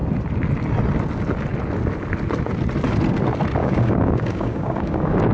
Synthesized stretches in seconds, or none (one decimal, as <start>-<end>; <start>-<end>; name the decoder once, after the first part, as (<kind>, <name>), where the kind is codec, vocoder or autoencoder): 3.6-5.3 (codec, DAC)